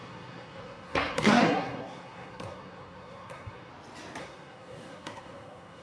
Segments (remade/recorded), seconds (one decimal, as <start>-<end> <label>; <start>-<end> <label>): 0.0-3.7 remade; 3.7-4.2 recorded; 4.2-5.8 remade

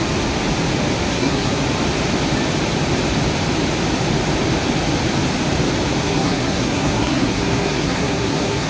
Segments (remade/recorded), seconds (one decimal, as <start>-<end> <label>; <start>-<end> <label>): 0.0-1.1 recorded; 1.1-1.6 remade; 1.6-6.0 recorded; 6.0-8.7 remade

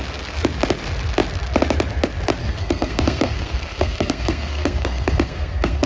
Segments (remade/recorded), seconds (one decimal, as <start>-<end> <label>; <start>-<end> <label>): 0.0-2.4 recorded; 2.4-5.9 remade

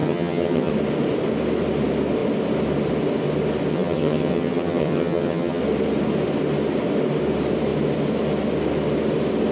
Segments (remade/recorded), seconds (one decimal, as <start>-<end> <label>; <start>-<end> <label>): 0.0-0.7 remade; 0.7-3.7 recorded; 3.7-5.6 remade; 5.6-9.5 recorded

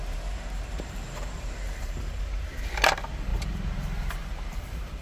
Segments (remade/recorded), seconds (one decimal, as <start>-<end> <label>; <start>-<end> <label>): 0.0-5.0 remade

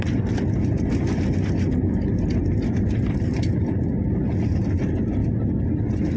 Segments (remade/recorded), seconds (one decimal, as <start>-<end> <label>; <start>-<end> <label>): 0.0-6.2 recorded

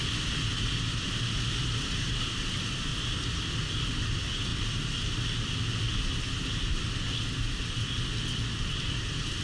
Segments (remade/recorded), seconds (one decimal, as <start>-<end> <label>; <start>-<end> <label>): 0.0-1.5 recorded; 1.5-2.9 remade; 2.9-3.9 recorded; 3.9-4.5 remade; 4.5-8.6 recorded; 8.6-9.4 remade

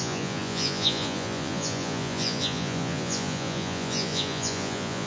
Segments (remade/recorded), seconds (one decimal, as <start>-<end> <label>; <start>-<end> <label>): 0.0-5.1 remade